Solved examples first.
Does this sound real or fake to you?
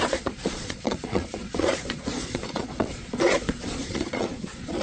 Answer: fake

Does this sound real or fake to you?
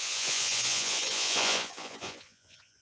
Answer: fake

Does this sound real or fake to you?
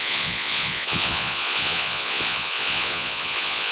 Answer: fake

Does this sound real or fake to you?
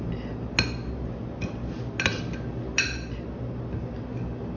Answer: real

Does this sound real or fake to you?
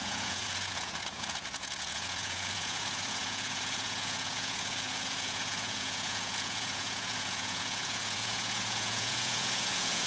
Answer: fake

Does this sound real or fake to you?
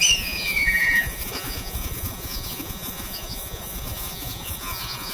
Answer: fake